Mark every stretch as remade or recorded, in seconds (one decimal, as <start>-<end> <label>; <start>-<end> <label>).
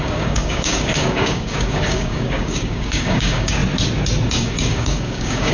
0.0-3.6 remade; 3.6-4.3 recorded; 4.3-5.5 remade